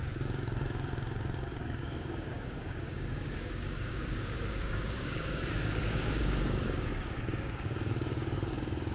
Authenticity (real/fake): fake